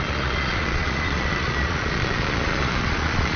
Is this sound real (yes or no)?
no